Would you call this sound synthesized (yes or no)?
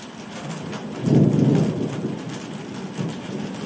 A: no